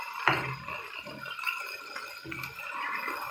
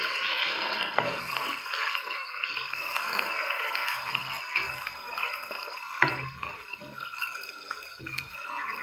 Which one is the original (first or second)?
first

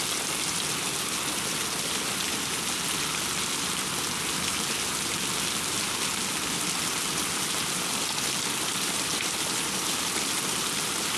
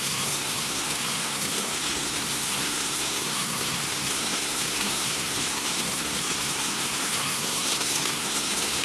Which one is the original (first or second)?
first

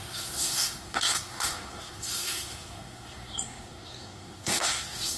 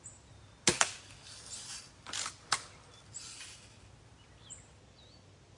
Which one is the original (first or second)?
second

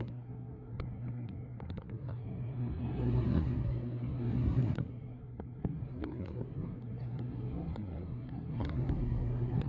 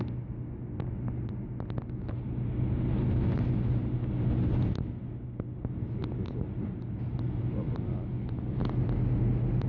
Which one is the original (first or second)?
second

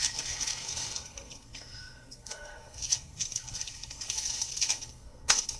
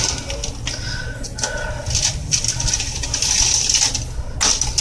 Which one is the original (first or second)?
second